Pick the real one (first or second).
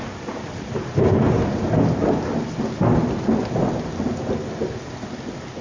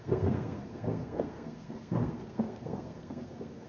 first